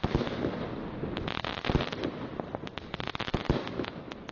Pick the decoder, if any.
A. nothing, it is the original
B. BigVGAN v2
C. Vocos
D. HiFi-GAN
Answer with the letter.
A